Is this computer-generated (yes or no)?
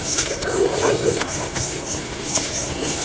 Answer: yes